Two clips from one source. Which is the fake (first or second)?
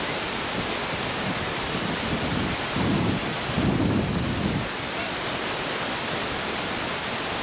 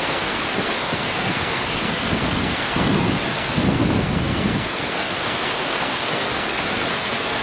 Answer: second